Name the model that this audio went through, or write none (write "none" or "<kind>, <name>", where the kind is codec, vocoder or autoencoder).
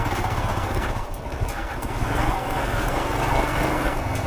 codec, SNAC